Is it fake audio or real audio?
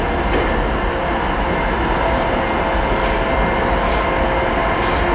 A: real